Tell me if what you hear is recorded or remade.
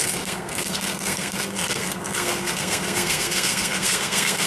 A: remade